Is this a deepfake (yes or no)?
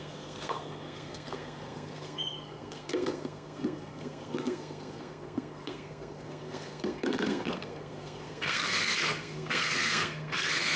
yes